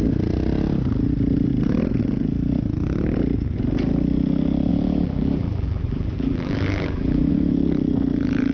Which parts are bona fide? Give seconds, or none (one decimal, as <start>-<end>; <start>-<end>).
0.0-4.7; 7.3-8.5